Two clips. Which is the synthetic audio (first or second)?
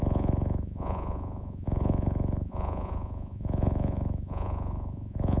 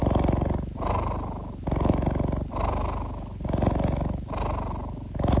first